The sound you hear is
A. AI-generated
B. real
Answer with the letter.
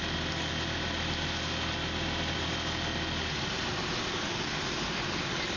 B